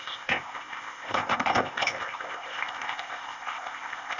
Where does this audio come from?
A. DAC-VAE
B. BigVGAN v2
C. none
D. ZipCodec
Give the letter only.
D